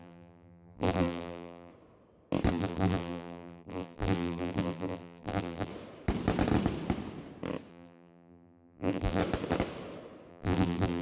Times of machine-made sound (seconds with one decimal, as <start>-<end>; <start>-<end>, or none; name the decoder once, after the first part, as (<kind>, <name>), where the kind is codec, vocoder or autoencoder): 0.0-1.7 (vocoder, BigVGAN v2); 2.5-5.7; 7.7-9.2; 10.3-11.0